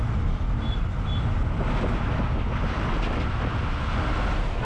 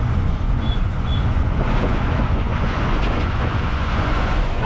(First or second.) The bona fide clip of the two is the first